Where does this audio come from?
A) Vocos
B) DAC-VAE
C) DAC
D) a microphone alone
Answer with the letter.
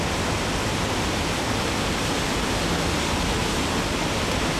D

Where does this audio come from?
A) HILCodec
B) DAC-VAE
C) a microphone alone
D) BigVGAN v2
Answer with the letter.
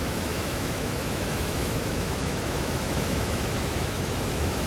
B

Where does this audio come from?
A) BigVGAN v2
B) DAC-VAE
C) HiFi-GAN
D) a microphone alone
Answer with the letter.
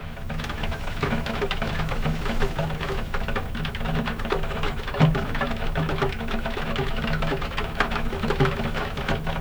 B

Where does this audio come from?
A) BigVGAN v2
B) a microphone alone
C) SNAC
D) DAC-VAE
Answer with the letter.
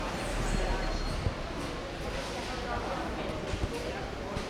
B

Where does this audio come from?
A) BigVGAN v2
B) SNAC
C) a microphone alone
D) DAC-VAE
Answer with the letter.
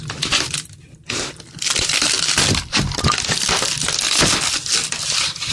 C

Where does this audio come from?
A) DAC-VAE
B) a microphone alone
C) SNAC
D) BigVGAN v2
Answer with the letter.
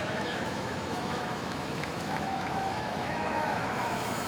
A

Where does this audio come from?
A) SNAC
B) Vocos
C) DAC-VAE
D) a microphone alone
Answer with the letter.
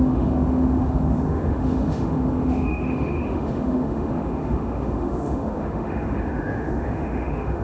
C